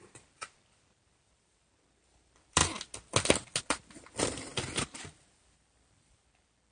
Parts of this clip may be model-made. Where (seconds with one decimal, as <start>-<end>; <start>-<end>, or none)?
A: 0.0-2.6; 3.6-4.5; 5.1-6.7